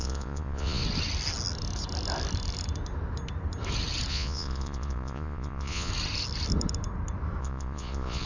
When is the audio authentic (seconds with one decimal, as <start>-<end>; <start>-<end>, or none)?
0.8-4.1; 5.9-7.4

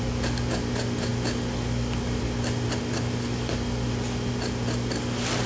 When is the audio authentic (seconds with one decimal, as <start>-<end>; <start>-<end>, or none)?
0.0-5.5

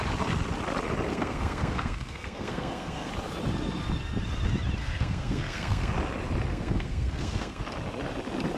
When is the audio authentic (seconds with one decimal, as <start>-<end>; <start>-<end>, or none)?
0.0-1.1; 3.1-4.8; 5.9-6.5; 7.6-8.6

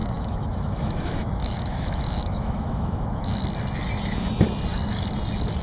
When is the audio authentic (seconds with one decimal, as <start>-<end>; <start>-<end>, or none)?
3.4-5.6